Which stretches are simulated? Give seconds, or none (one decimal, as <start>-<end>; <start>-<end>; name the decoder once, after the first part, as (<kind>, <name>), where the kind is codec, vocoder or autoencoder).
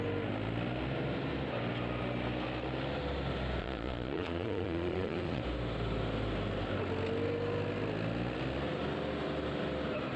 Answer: 3.6-5.4 (vocoder, Vocos)